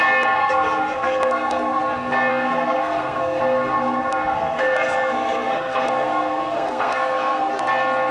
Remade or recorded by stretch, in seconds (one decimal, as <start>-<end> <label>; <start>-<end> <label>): 0.0-0.4 recorded; 0.4-1.8 remade; 1.8-2.3 recorded; 2.3-3.4 remade; 3.4-3.8 recorded; 3.8-7.5 remade; 7.5-8.1 recorded